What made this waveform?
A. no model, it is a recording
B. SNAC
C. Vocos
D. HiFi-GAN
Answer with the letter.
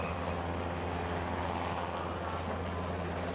A